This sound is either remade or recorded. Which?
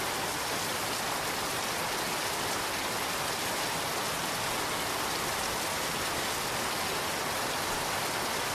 recorded